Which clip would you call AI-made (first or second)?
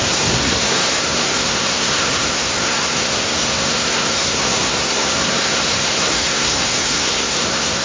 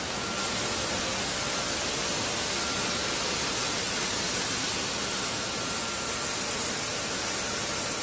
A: first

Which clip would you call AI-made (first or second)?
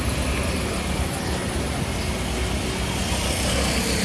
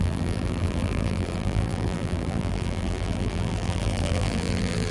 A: second